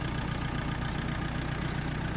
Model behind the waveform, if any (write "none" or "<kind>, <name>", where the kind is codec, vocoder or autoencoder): none